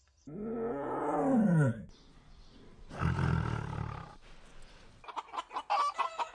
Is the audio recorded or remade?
recorded